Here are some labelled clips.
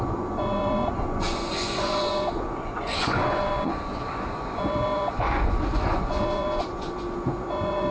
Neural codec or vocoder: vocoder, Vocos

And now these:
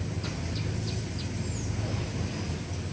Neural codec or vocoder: none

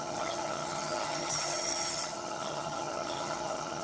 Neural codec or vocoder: vocoder, HiFi-GAN